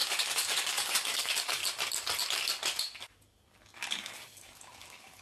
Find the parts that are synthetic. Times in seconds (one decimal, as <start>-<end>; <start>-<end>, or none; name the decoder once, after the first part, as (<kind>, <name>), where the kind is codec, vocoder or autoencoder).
0.0-1.6 (codec, DAC); 2.8-5.2